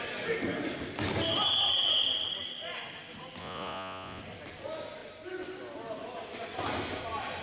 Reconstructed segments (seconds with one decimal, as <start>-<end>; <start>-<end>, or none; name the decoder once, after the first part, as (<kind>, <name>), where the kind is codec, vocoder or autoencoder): 3.4-4.2 (vocoder, Vocos)